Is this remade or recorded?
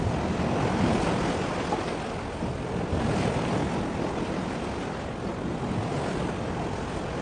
recorded